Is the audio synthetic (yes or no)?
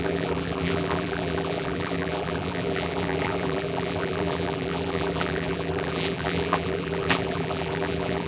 yes